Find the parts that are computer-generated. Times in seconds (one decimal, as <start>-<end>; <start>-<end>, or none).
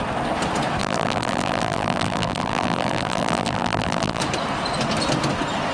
0.8-4.2